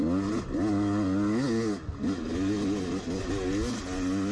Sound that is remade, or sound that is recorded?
recorded